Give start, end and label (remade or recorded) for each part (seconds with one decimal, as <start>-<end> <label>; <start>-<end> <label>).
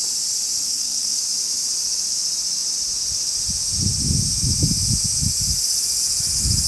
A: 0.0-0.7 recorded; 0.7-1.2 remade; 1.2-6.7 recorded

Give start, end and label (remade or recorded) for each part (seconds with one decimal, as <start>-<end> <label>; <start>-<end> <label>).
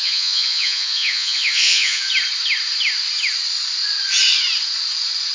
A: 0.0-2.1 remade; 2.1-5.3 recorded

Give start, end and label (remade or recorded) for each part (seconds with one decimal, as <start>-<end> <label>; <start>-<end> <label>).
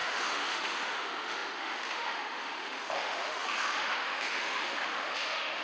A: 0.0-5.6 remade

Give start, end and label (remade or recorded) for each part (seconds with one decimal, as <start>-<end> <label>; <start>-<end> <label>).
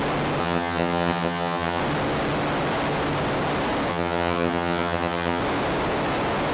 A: 0.0-0.4 recorded; 0.4-1.8 remade; 1.8-3.9 recorded; 3.9-5.4 remade; 5.4-6.5 recorded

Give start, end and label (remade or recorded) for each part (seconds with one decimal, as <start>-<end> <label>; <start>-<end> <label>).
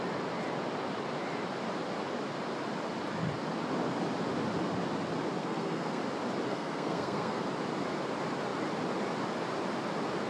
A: 0.0-5.4 recorded; 5.4-6.0 remade; 6.0-6.5 recorded; 6.5-7.4 remade; 7.4-10.3 recorded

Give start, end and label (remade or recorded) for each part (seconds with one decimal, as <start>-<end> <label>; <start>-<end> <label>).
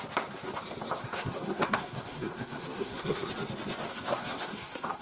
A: 0.0-1.0 recorded; 1.0-3.3 remade; 3.3-3.9 recorded; 3.9-5.0 remade